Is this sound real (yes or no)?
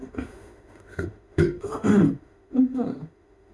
no